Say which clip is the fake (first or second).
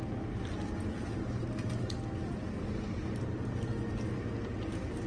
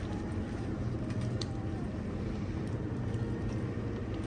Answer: second